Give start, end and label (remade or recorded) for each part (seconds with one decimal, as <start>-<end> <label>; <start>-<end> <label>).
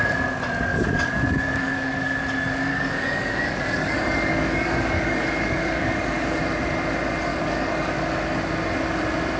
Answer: 0.0-0.7 recorded; 0.7-2.2 remade; 2.2-2.7 recorded; 2.7-6.4 remade; 6.4-7.3 recorded; 7.3-7.9 remade; 7.9-9.4 recorded